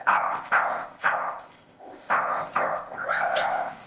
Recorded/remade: remade